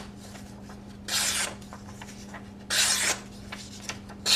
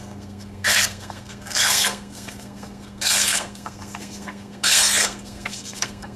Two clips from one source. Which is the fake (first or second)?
second